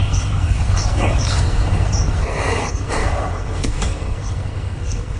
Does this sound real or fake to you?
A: fake